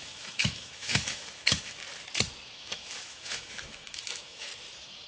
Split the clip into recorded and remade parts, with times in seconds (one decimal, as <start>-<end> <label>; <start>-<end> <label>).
0.0-1.8 remade; 1.8-2.5 recorded; 2.5-4.5 remade; 4.5-5.1 recorded